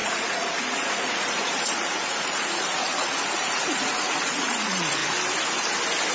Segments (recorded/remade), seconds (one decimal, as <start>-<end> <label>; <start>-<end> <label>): 0.0-5.0 remade; 5.0-6.1 recorded